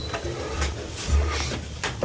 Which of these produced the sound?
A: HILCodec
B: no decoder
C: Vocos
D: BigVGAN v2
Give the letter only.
B